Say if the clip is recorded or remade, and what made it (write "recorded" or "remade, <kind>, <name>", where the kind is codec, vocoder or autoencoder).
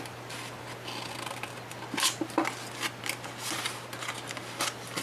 recorded